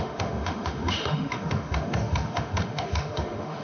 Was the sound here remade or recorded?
remade